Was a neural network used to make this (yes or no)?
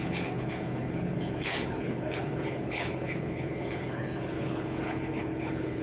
yes